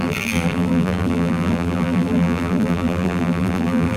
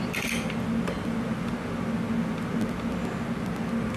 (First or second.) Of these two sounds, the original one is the second